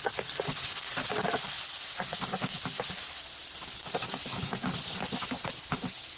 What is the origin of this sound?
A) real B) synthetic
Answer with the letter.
A